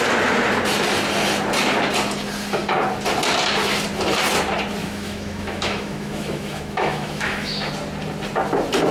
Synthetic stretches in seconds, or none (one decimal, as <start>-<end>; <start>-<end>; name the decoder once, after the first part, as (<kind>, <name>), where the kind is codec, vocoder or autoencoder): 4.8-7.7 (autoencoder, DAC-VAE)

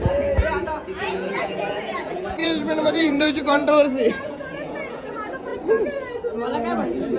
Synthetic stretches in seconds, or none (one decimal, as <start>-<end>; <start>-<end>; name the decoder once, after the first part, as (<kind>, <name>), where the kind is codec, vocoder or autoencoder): 0.0-3.6 (vocoder, Vocos); 4.1-5.5

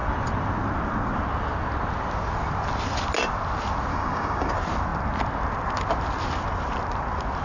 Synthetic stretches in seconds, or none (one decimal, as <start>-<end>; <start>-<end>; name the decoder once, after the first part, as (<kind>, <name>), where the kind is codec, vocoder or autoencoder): 3.9-4.5 (codec, DAC)